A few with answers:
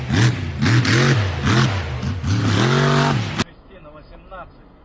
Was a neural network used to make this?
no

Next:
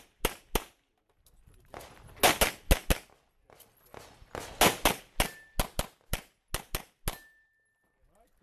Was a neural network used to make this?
no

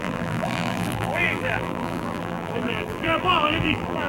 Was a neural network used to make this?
yes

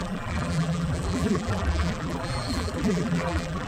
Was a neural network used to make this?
yes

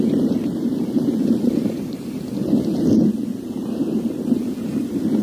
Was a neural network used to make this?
yes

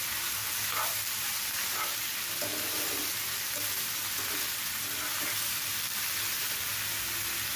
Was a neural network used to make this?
no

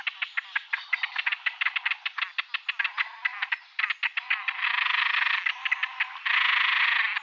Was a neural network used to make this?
no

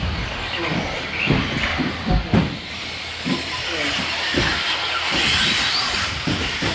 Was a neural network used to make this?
no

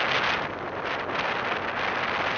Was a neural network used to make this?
no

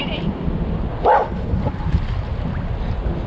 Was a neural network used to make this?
no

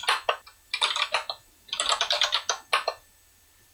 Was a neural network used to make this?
no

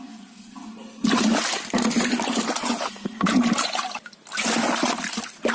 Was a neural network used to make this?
no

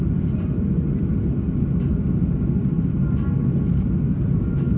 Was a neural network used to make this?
no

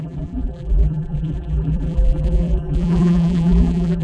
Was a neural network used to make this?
yes